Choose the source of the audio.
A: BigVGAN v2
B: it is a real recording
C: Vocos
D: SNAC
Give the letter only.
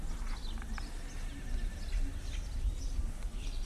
B